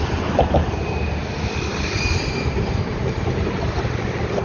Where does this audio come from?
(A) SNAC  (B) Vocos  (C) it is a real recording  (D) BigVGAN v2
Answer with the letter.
D